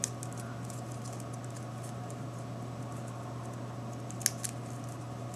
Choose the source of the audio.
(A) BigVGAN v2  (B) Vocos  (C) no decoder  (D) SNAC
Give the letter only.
C